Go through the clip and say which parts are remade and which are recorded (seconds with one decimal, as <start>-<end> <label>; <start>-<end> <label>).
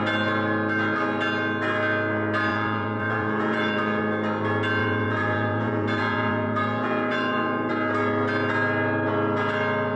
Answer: 0.0-2.5 recorded; 2.5-4.0 remade; 4.0-4.8 recorded; 4.8-7.7 remade; 7.7-10.0 recorded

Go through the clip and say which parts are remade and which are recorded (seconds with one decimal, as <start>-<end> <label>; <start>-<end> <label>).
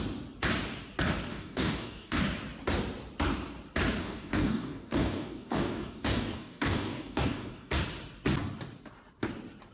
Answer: 0.0-1.3 recorded; 1.3-2.2 remade; 2.2-4.0 recorded; 4.0-7.7 remade; 7.7-9.7 recorded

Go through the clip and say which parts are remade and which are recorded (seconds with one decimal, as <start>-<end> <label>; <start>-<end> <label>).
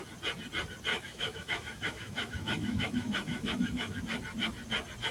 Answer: 0.0-0.9 recorded; 0.9-4.0 remade; 4.0-5.1 recorded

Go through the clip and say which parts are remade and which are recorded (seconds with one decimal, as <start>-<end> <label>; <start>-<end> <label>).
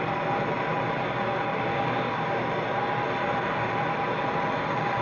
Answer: 0.0-1.7 recorded; 1.7-2.4 remade; 2.4-5.0 recorded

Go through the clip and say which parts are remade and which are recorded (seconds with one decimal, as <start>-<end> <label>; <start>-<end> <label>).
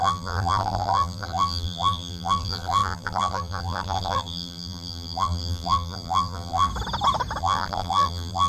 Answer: 0.0-6.7 remade; 6.7-7.4 recorded; 7.4-8.5 remade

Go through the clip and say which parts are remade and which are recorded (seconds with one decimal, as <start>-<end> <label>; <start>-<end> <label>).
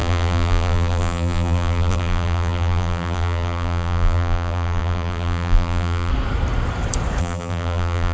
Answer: 0.0-6.1 remade; 6.1-7.2 recorded; 7.2-8.1 remade